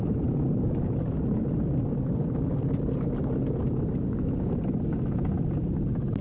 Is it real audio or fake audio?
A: real